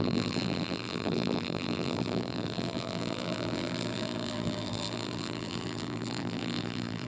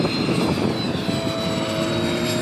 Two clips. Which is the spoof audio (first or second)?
first